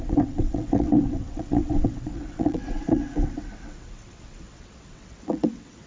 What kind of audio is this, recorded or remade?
remade